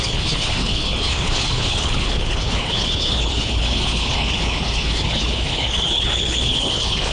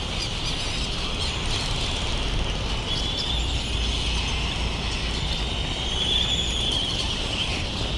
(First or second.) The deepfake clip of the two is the first